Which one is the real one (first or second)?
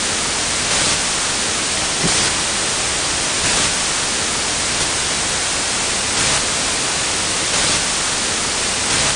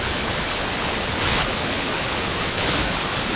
first